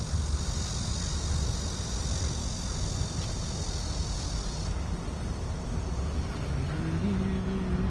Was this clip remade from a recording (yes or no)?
no